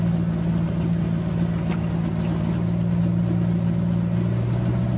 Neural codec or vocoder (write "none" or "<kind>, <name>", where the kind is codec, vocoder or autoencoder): none